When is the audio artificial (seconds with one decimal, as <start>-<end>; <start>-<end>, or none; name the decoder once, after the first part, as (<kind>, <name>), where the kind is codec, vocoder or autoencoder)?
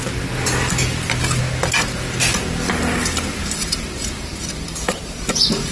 3.4-5.7 (vocoder, BigVGAN v2)